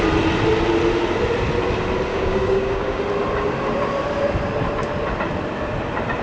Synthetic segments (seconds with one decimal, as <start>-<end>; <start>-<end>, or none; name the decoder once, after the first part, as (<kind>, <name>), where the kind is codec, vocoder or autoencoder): 2.1-3.0 (codec, DAC)